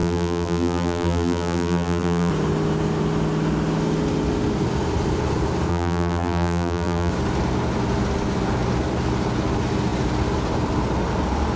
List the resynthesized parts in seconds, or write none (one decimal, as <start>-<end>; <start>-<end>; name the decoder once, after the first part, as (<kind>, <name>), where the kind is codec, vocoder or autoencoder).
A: 0.0-2.3 (vocoder, BigVGAN v2); 5.7-7.1